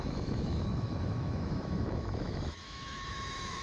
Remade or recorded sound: remade